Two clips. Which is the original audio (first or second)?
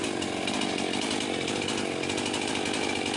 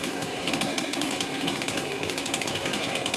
first